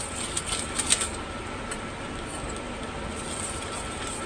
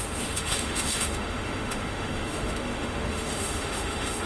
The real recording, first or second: first